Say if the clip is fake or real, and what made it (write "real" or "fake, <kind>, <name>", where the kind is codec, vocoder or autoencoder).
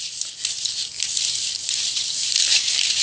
fake, vocoder, BigVGAN v2